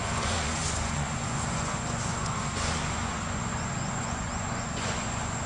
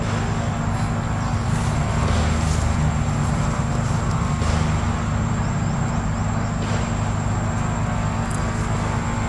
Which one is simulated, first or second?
first